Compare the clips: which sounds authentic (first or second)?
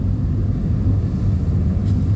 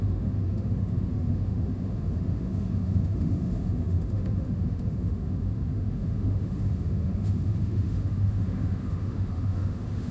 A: first